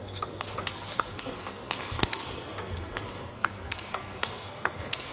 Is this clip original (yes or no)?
no